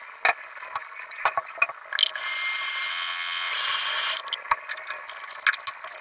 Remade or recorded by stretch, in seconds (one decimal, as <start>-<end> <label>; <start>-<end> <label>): 0.0-2.9 recorded; 2.9-3.5 remade; 3.5-6.0 recorded

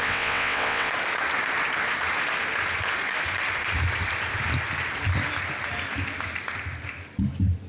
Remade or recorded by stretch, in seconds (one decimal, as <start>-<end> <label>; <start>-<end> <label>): 0.0-0.9 remade; 0.9-7.7 recorded